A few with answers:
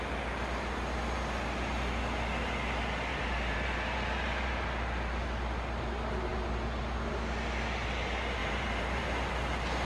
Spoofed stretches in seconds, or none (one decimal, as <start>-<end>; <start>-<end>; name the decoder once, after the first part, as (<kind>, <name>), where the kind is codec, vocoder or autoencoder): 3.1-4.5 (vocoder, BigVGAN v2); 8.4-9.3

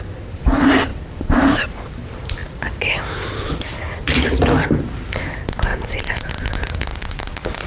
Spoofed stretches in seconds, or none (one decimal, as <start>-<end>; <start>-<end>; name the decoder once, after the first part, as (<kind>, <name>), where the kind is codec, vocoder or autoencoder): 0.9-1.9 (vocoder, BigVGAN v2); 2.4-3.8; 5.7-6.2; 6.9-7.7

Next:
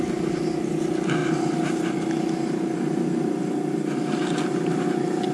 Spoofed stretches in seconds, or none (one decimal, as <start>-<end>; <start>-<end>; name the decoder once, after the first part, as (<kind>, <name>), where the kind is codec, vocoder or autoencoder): none

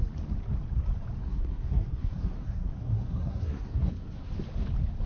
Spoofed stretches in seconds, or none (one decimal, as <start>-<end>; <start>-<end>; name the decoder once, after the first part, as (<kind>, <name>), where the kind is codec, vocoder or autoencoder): 1.2-4.3 (codec, SNAC)

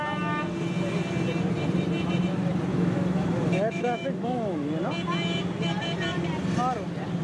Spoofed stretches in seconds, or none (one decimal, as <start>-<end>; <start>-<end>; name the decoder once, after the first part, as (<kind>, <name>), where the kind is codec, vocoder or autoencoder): 2.7-4.7 (autoencoder, DAC-VAE)